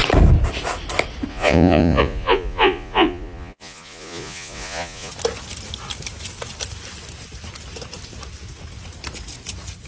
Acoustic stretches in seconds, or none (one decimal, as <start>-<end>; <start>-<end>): 0.0-1.3; 5.1-9.9

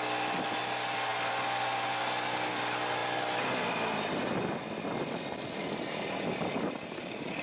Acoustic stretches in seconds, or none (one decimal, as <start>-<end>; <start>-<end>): 0.0-7.4

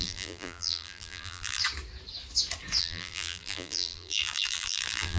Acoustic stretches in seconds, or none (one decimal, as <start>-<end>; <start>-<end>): 1.6-2.8